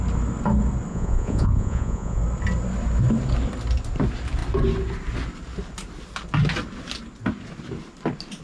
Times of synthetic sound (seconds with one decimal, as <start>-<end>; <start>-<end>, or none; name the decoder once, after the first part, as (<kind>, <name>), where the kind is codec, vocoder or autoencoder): 0.9-2.2 (vocoder, Vocos)